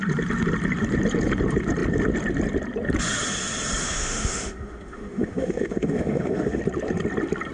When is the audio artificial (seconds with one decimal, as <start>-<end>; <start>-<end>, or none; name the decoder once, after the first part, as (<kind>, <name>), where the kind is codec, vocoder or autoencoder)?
3.8-6.6 (autoencoder, DAC-VAE)